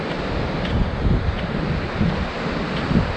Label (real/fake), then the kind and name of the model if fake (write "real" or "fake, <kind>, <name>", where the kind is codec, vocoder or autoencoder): real